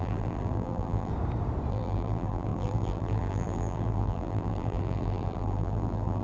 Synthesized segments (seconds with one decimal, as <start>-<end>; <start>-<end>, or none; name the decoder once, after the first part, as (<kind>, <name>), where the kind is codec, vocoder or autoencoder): 0.0-1.1 (vocoder, BigVGAN v2); 1.7-6.2